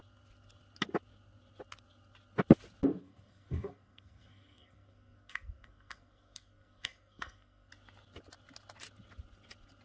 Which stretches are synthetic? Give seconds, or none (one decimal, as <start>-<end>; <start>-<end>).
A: 3.0-7.7